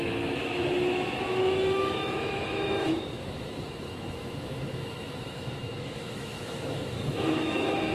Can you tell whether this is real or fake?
fake